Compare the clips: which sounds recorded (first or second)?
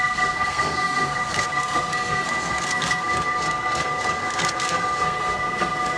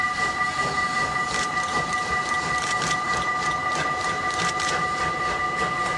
second